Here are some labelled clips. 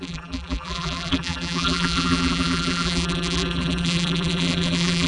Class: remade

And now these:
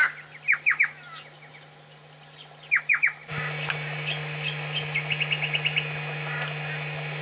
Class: recorded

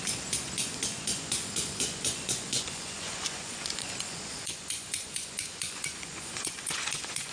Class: remade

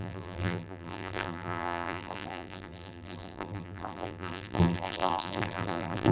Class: remade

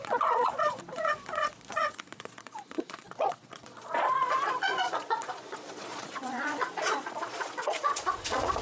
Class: remade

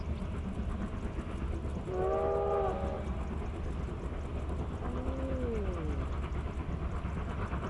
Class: recorded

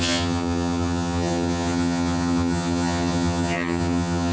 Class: remade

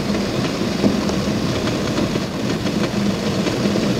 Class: recorded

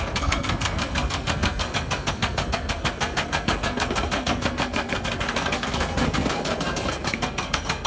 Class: remade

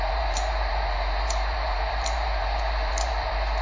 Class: remade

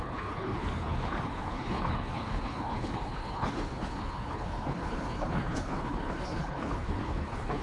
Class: remade